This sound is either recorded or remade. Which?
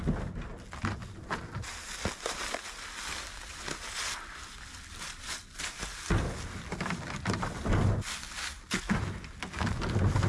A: recorded